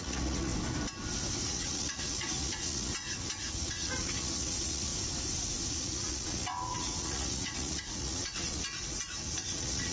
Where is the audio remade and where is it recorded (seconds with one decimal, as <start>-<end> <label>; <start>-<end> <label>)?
0.0-0.5 remade; 0.5-1.5 recorded; 1.5-4.9 remade; 4.9-5.7 recorded; 5.7-9.9 remade